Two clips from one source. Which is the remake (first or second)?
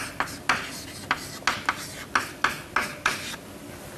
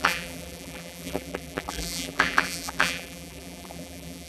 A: second